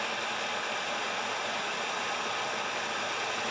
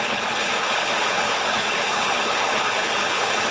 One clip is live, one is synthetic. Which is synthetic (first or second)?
second